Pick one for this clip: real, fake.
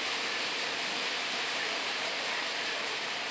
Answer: fake